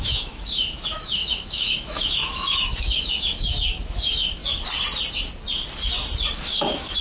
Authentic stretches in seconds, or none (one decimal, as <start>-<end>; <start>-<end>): 4.4-6.4